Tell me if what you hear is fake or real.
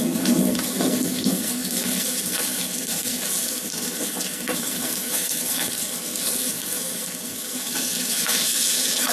fake